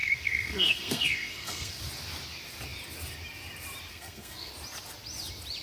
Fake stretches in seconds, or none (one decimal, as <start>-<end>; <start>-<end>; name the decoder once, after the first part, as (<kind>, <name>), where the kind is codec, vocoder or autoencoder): 0.0-1.8 (codec, SNAC); 3.9-4.5